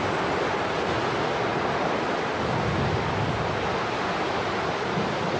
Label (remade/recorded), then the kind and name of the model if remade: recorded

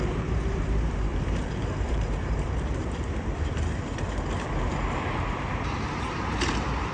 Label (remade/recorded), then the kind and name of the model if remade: remade, vocoder, BigVGAN v2